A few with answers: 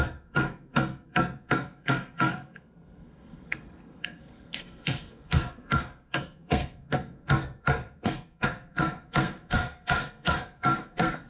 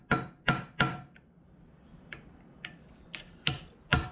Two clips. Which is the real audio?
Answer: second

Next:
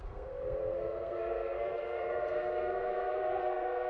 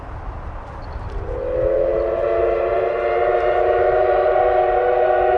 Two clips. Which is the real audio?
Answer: second